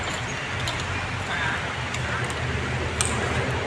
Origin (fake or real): real